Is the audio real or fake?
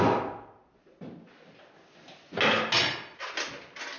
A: real